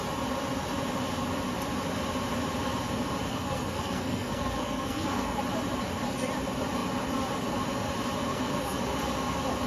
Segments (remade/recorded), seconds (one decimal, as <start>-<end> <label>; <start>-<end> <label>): 0.0-3.3 recorded; 3.3-5.4 remade; 5.4-8.3 recorded; 8.3-8.8 remade; 8.8-9.7 recorded